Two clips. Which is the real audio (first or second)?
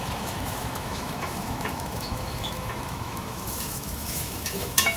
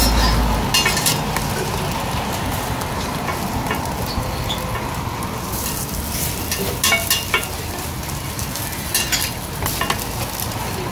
second